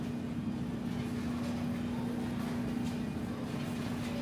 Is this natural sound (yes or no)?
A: yes